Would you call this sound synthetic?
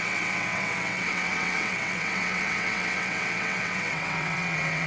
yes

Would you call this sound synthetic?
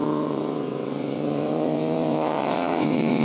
yes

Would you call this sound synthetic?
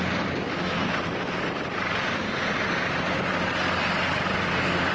no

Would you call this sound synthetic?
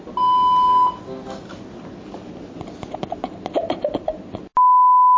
no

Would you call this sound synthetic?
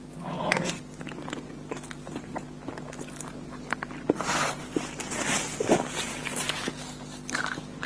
no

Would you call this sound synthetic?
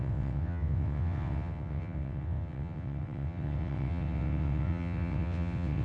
yes